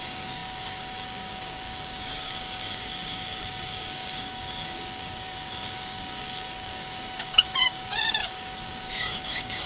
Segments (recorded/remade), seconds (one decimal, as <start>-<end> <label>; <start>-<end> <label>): 0.0-9.7 remade